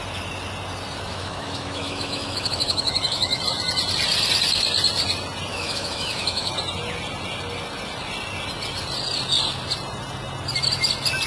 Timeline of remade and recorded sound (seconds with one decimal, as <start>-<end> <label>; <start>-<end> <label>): 0.0-1.1 recorded; 1.1-3.4 remade; 3.4-5.5 recorded; 5.5-6.5 remade; 6.5-11.3 recorded